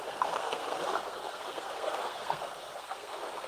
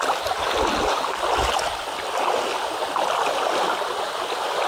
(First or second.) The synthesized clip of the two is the first